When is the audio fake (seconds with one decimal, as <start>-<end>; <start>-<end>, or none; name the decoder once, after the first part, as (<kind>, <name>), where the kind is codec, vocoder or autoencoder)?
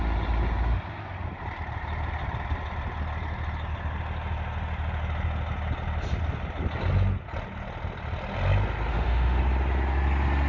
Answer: 8.9-9.4 (autoencoder, DAC-VAE)